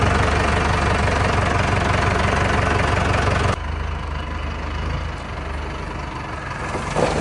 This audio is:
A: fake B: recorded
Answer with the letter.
B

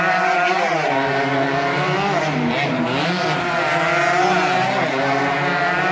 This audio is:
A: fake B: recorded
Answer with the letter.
B